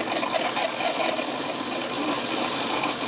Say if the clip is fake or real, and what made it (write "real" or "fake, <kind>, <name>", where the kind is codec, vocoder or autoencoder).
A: real